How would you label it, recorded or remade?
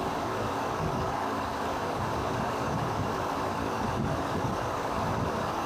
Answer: remade